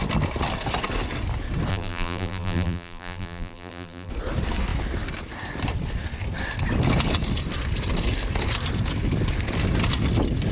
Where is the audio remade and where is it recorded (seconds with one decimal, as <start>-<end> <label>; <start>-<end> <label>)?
0.0-1.7 recorded; 1.7-4.1 remade; 4.1-10.5 recorded